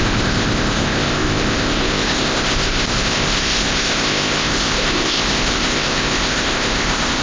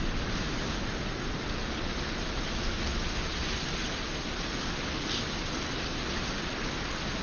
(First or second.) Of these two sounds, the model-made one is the first